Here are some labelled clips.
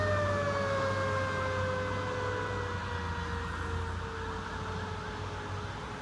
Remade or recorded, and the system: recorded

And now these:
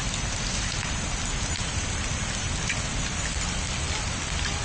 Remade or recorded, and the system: recorded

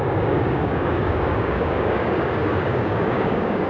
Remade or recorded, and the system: remade, codec, DAC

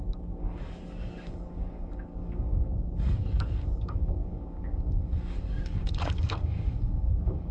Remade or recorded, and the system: remade, codec, DAC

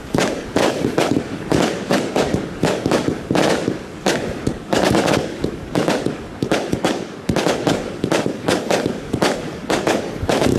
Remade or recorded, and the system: remade, codec, DAC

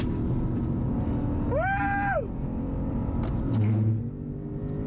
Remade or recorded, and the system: recorded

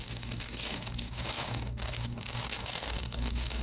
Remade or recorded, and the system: remade, codec, DAC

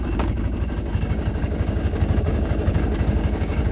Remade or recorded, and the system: remade, codec, DAC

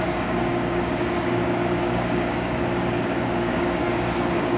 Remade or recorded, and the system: remade, codec, DAC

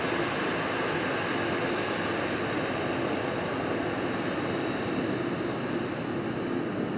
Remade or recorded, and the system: recorded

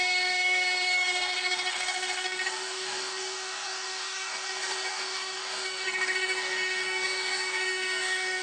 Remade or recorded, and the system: remade, codec, DAC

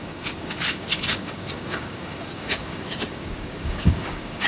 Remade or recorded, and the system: remade, codec, DAC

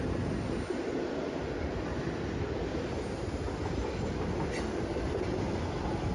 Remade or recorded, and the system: recorded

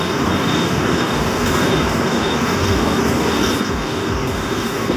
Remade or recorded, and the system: remade, codec, DAC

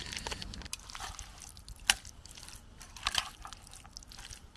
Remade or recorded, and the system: recorded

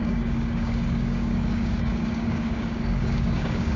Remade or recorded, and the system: remade, codec, DAC